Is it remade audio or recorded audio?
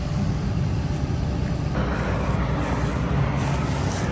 recorded